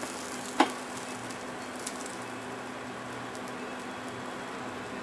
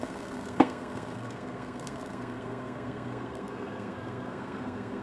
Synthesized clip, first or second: second